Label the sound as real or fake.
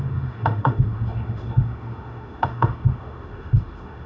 fake